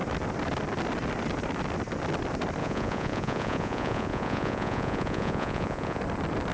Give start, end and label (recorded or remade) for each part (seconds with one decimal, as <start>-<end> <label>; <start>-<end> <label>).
0.0-2.6 recorded; 2.6-6.0 remade; 6.0-6.5 recorded